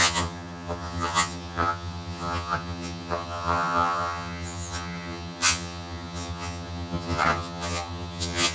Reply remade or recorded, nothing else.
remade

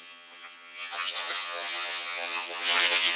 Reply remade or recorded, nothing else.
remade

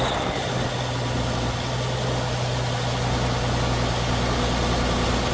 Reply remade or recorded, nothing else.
recorded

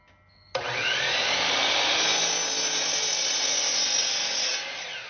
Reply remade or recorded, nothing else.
recorded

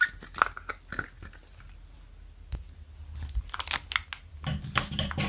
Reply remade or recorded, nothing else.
recorded